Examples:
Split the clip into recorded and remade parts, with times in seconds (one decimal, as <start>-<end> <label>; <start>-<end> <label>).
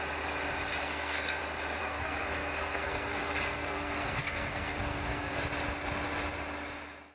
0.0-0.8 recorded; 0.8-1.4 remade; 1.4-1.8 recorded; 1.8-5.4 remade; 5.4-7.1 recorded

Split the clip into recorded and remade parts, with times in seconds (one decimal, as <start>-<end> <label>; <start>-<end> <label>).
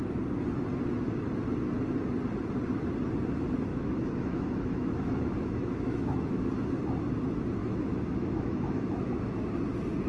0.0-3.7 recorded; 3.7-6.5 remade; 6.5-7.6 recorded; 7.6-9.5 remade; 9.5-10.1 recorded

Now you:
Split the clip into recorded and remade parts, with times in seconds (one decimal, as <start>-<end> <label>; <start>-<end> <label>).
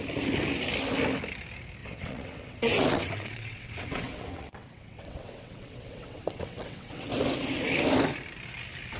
0.0-1.8 recorded; 1.8-7.1 remade; 7.1-9.0 recorded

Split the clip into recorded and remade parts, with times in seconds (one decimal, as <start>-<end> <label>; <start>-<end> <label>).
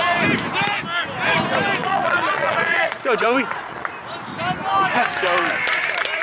0.0-1.8 recorded; 1.8-3.9 remade; 3.9-6.2 recorded